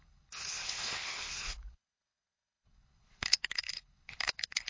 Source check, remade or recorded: remade